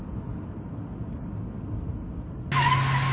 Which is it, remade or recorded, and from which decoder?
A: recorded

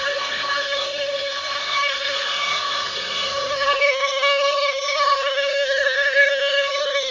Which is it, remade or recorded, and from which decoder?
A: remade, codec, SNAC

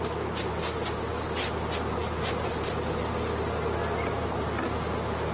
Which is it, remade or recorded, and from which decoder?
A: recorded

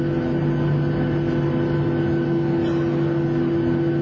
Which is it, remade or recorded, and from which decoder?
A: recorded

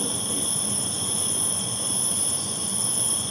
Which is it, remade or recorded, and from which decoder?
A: remade, vocoder, Vocos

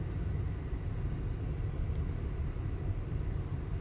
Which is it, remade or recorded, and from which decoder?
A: recorded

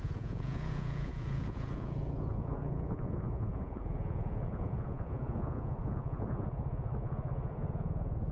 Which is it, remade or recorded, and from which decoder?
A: remade, vocoder, Vocos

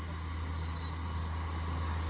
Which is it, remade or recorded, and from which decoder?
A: recorded